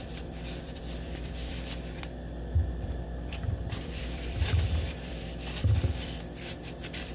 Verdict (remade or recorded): remade